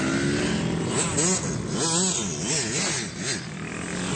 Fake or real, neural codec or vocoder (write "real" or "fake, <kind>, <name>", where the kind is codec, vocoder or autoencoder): real